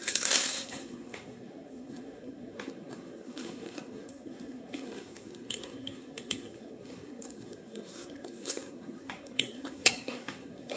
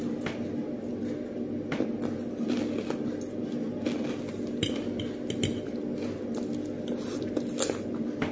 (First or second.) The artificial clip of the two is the first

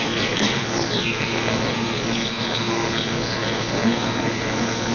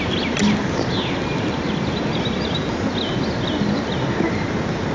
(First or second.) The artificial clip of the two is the first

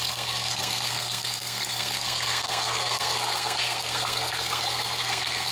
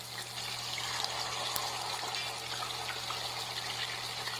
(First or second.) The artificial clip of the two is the first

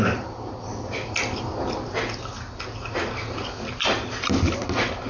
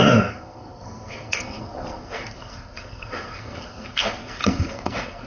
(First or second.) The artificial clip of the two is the second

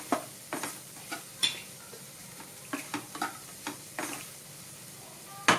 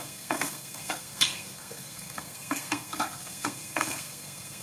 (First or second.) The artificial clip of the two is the second